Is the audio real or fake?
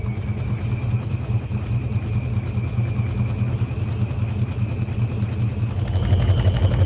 real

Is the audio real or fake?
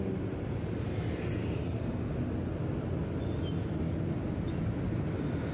real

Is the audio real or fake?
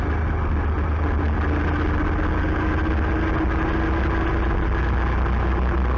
real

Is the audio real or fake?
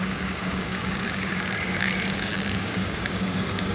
fake